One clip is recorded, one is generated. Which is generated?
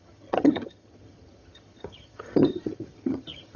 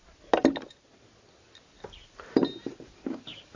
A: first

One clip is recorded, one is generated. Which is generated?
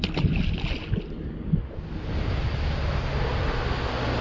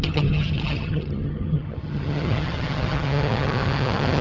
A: second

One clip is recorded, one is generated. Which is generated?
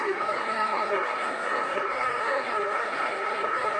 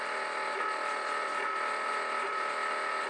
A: first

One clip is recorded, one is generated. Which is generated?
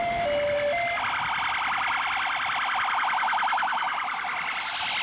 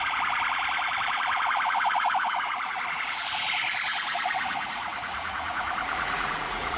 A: second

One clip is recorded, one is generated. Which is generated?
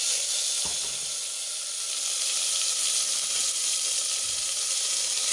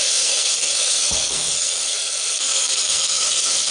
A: second